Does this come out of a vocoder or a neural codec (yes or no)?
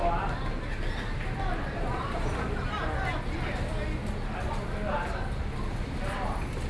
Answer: no